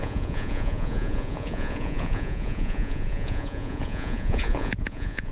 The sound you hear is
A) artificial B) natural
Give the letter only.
A